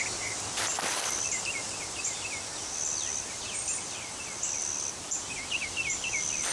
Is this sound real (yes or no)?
yes